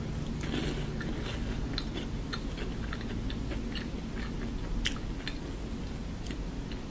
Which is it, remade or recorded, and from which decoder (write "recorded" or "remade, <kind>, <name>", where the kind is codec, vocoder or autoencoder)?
recorded